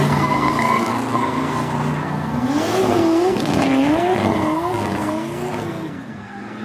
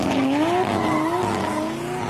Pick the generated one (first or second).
first